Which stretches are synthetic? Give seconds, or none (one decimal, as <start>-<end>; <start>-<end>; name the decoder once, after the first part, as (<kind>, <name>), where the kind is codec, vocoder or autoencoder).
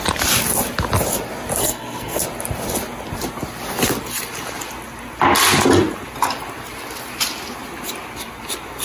1.6-2.2 (codec, SNAC)